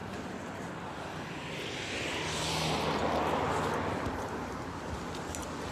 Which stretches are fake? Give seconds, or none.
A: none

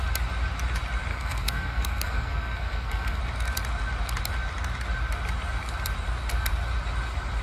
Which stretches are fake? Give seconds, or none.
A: 1.1-3.2 (codec, SNAC)

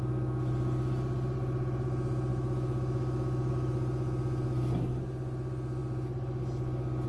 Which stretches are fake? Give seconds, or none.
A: 2.3-3.5 (autoencoder, DAC-VAE)